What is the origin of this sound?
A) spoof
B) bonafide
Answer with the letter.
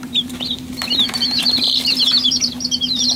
A